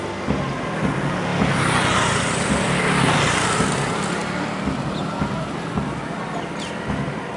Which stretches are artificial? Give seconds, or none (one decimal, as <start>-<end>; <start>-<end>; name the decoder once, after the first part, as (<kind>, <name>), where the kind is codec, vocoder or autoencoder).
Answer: none